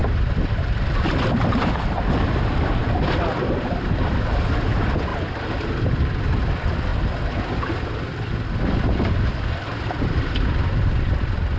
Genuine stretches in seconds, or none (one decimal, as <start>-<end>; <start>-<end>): 2.8-3.9